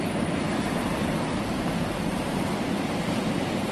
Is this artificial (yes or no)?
yes